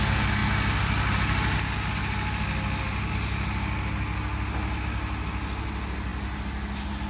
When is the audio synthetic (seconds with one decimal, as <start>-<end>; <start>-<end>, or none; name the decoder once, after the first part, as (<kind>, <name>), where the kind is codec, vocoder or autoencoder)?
none